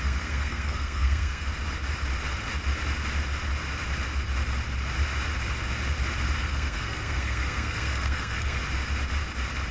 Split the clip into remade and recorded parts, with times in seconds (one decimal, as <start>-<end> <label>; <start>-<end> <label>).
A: 0.0-1.5 remade; 1.5-6.4 recorded; 6.4-8.6 remade; 8.6-9.7 recorded